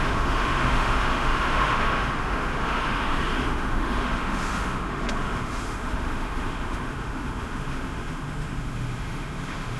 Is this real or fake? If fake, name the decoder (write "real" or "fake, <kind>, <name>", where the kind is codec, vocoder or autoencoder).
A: fake, autoencoder, DAC-VAE